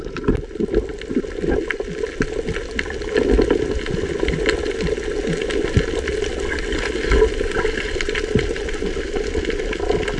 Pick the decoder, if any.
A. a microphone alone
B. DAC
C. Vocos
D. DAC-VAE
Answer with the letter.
A